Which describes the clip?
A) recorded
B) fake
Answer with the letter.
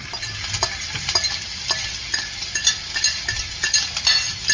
A